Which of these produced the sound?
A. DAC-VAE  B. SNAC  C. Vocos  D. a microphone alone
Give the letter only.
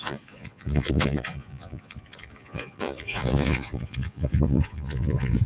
C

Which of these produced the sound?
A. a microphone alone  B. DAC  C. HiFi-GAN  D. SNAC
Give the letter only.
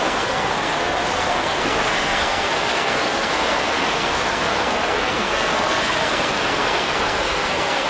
D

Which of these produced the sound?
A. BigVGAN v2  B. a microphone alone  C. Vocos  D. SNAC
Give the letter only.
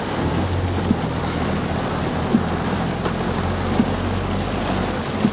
B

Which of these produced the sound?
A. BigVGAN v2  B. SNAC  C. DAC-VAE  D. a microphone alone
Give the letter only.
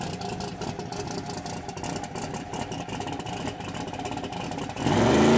D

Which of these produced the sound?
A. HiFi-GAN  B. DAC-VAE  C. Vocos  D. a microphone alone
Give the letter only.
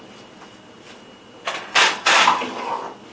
D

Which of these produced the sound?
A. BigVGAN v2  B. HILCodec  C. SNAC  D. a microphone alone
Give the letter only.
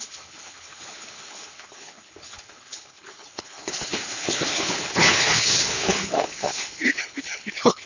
B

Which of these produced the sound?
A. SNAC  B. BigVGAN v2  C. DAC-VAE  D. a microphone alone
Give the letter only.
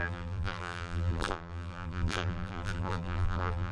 B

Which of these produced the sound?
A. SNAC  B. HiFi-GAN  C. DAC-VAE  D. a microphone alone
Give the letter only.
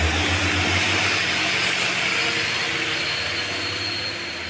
D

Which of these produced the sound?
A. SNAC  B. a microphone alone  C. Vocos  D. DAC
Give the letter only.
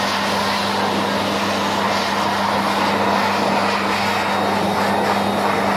B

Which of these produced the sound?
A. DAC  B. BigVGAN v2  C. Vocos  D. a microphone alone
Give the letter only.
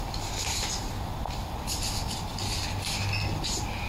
D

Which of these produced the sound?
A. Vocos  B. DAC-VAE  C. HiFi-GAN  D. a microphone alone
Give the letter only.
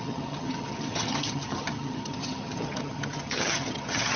C